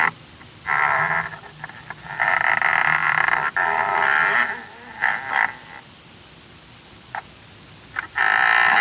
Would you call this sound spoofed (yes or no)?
no